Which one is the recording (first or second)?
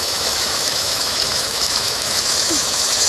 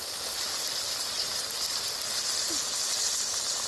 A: second